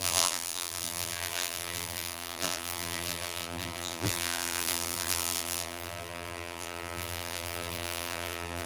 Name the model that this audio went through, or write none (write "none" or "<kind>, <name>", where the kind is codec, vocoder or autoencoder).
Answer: vocoder, BigVGAN v2